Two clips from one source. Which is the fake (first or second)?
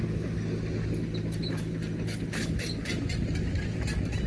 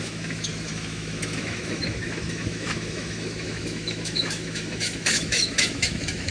second